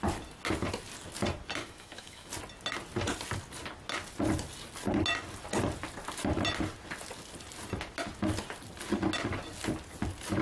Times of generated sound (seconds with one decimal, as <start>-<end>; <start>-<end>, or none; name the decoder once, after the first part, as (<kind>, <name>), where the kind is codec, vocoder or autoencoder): 1.6-2.3 (autoencoder, DAC-VAE)